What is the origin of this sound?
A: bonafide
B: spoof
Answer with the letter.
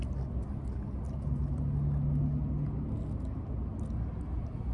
A